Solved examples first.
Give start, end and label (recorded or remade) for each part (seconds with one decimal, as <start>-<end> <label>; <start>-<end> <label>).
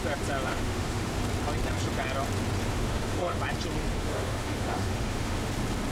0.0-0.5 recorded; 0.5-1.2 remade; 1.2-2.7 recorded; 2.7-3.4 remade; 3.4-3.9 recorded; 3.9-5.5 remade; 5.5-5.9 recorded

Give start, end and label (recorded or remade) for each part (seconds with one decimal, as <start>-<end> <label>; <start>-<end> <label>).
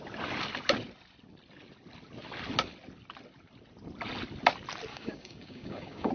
0.0-4.9 recorded; 4.9-6.1 remade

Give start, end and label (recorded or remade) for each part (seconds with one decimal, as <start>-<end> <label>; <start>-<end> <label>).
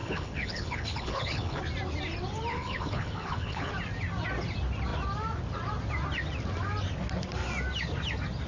0.0-1.6 remade; 1.6-2.5 recorded; 2.5-3.7 remade; 3.7-8.5 recorded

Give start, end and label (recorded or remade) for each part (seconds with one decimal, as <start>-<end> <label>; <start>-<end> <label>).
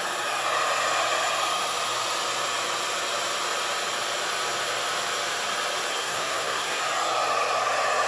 0.0-5.9 recorded; 5.9-6.8 remade; 6.8-8.1 recorded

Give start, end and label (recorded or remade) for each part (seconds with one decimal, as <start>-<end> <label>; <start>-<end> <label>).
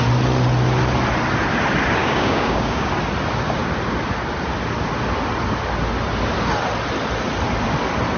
0.0-2.0 recorded; 2.0-2.9 remade; 2.9-8.2 recorded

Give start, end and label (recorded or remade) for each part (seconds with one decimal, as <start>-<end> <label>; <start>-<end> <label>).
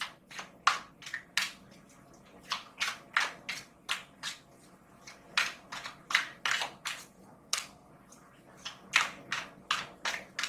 0.0-7.2 recorded; 7.2-7.9 remade; 7.9-10.5 recorded